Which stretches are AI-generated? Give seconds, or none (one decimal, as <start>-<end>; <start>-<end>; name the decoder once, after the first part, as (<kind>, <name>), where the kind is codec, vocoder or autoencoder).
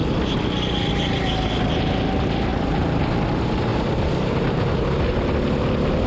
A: 2.5-3.0 (vocoder, BigVGAN v2); 3.7-4.8